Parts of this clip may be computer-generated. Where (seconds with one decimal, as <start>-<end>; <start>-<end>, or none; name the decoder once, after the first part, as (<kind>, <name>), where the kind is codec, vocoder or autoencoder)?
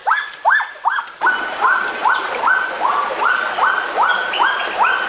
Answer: none